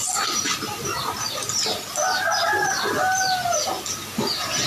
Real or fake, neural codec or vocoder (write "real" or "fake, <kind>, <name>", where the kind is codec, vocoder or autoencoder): real